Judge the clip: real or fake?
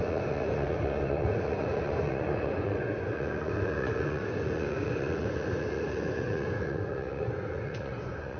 fake